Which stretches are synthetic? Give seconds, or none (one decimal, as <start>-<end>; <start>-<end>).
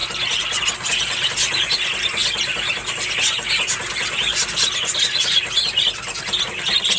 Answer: none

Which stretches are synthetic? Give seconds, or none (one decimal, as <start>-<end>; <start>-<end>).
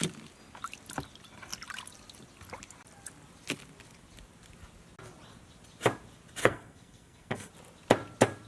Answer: 6.4-7.5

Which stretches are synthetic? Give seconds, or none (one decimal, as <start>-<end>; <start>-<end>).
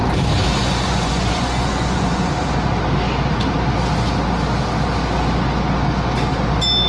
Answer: 0.6-2.3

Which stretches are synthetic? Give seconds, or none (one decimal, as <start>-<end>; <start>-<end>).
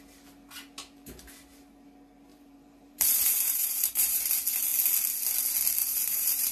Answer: 2.3-4.2; 5.8-6.5